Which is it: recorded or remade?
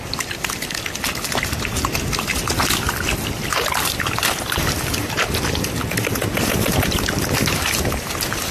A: recorded